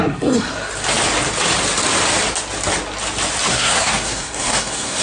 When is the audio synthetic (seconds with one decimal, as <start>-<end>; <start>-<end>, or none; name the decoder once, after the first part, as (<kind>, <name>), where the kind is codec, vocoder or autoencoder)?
0.0-0.5 (codec, SNAC); 3.5-5.0

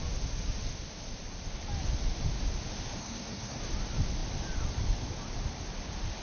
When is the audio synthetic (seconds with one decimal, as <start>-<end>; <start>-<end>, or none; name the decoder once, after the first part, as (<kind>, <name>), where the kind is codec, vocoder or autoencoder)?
3.0-3.6 (codec, SNAC)

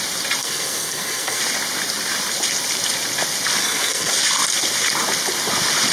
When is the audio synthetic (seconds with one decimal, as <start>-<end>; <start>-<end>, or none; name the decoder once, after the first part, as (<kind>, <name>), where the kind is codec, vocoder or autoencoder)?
0.4-1.4 (codec, SNAC); 3.6-4.1